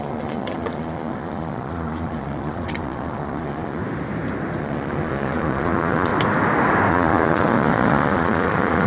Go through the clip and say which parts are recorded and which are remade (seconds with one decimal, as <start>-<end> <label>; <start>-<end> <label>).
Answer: 0.0-3.8 remade; 3.8-4.6 recorded; 4.6-6.1 remade; 6.1-6.9 recorded; 6.9-8.9 remade